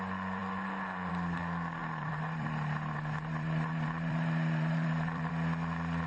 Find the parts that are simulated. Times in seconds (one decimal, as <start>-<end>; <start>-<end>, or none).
1.8-5.3